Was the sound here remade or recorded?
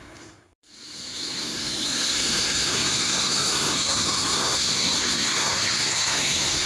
remade